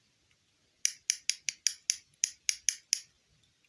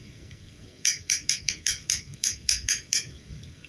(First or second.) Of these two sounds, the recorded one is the first